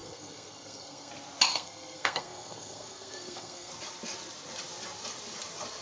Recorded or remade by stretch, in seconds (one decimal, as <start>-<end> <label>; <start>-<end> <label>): 0.0-1.1 remade; 1.1-1.5 recorded; 1.5-3.7 remade; 3.7-5.8 recorded